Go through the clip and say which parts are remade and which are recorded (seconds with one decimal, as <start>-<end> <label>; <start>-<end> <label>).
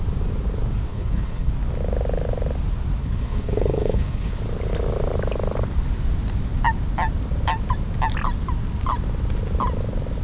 0.0-0.9 recorded; 0.9-1.5 remade; 1.5-3.0 recorded; 3.0-4.4 remade; 4.4-10.2 recorded